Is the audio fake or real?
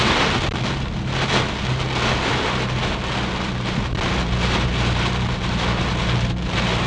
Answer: real